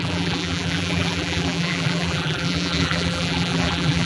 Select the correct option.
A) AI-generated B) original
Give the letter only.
A